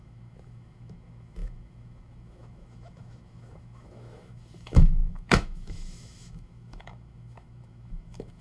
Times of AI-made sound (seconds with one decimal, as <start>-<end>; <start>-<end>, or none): 0.0-8.4